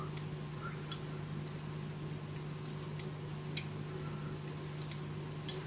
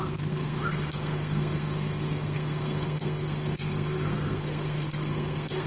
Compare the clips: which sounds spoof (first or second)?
second